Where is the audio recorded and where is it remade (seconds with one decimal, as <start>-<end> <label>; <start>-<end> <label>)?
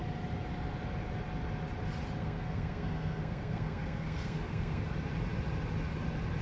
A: 0.0-2.2 recorded; 2.2-4.8 remade; 4.8-6.4 recorded